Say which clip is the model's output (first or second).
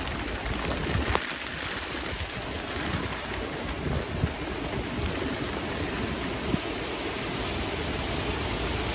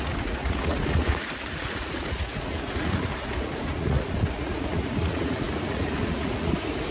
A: second